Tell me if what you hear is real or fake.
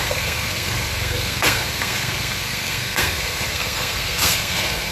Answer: fake